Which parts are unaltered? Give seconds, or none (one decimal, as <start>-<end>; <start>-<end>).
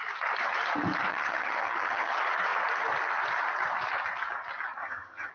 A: 0.0-1.1; 2.1-4.8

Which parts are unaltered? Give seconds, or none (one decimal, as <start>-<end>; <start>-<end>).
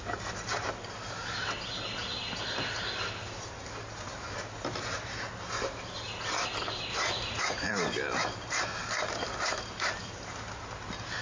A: 0.0-6.9; 7.7-11.2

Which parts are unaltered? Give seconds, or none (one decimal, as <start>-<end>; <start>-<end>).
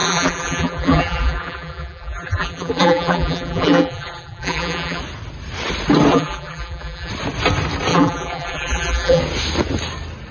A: 5.0-6.1; 7.1-7.9; 9.2-10.3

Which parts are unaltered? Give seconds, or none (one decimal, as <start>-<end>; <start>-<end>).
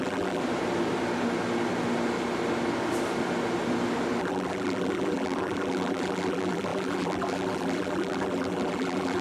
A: 0.4-4.2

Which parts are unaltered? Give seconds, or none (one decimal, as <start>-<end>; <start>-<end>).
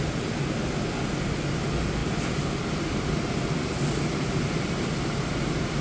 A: 0.0-2.0